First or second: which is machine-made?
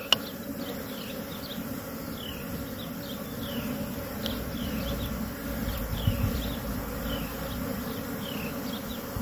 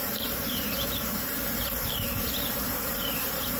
second